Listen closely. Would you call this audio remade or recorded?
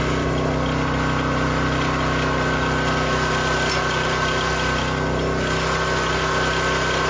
recorded